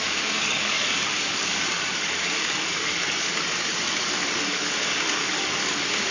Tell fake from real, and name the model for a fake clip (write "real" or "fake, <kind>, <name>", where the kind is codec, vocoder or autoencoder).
fake, codec, DAC